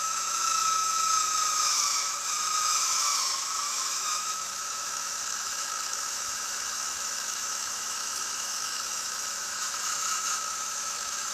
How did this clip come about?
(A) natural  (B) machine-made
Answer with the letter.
B